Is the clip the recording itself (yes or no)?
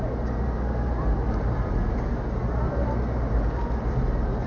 yes